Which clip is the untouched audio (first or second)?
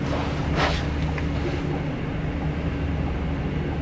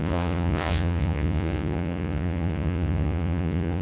first